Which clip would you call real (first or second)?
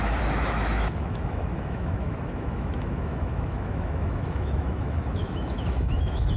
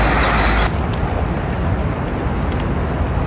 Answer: second